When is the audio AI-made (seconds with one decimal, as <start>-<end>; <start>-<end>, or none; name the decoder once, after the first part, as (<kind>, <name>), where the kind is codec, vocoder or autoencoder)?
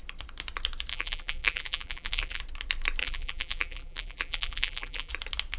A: 0.9-2.4 (vocoder, BigVGAN v2); 3.0-5.1